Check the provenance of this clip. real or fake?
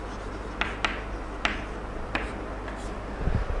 real